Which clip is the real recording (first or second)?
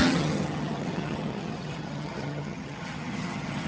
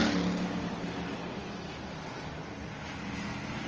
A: second